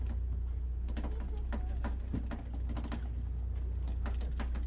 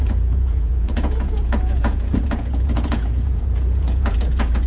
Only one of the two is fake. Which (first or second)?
second